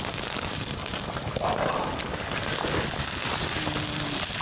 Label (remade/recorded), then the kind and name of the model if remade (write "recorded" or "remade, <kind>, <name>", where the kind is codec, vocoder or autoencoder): recorded